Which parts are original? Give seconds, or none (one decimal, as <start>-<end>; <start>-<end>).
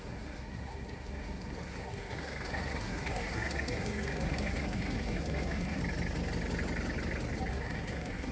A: 5.8-7.5